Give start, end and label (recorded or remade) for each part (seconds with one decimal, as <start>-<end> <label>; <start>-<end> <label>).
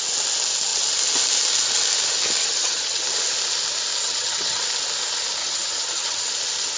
0.0-2.4 recorded; 2.4-3.0 remade; 3.0-4.0 recorded; 4.0-4.6 remade; 4.6-5.4 recorded; 5.4-6.3 remade; 6.3-6.8 recorded